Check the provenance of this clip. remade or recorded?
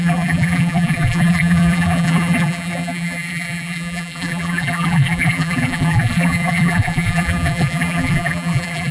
remade